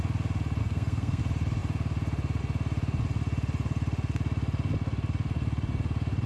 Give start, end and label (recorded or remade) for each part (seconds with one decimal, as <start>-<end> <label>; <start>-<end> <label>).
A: 0.0-0.6 recorded; 0.6-1.2 remade; 1.2-6.3 recorded